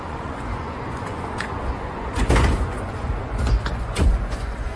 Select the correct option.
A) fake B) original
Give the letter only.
A